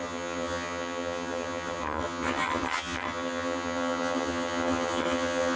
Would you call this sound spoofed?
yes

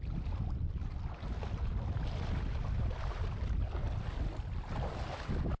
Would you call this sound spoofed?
no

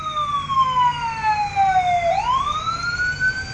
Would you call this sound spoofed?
no